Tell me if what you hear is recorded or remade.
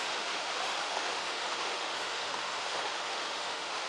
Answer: remade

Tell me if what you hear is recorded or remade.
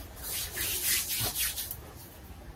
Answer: recorded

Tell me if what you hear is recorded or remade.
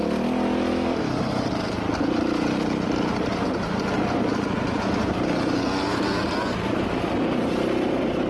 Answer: recorded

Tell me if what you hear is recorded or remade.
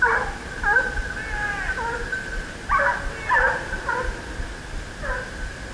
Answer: recorded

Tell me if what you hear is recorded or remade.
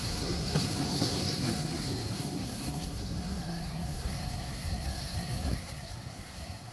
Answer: remade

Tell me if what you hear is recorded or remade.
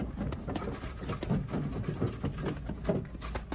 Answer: recorded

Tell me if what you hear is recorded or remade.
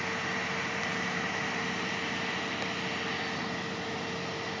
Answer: recorded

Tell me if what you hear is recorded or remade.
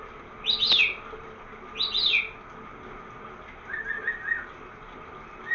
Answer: recorded